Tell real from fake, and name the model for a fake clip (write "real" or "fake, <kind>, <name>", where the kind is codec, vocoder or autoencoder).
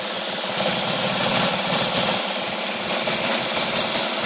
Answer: real